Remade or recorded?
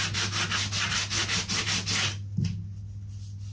recorded